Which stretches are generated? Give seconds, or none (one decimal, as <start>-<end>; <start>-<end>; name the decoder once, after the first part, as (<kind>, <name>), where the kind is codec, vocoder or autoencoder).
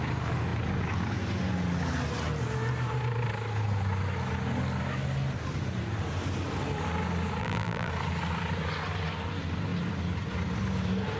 7.4-7.9 (vocoder, BigVGAN v2)